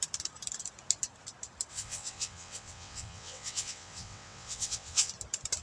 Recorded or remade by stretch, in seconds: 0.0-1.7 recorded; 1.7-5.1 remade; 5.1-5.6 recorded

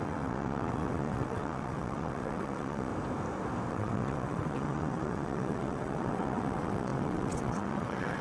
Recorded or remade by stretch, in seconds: 0.0-2.9 remade; 2.9-3.7 recorded; 3.7-8.2 remade

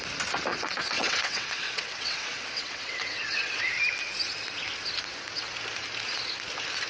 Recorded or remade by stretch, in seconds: 0.0-0.5 recorded; 0.5-3.7 remade; 3.7-6.9 recorded

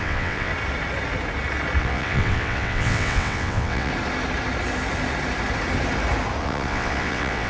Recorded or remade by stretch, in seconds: 0.0-0.5 remade; 0.5-1.8 recorded; 1.8-3.9 remade; 3.9-6.4 recorded; 6.4-7.5 remade

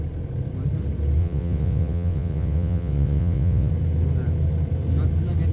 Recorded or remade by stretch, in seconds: 0.0-1.2 recorded; 1.2-3.7 remade; 3.7-5.5 recorded

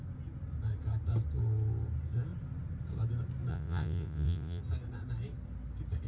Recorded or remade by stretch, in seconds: 0.0-3.5 recorded; 3.5-4.6 remade; 4.6-6.1 recorded

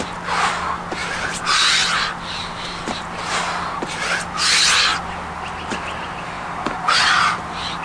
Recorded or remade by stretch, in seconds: 0.0-7.8 recorded

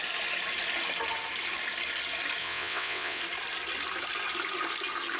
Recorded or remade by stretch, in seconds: 0.0-2.4 recorded; 2.4-3.2 remade; 3.2-5.2 recorded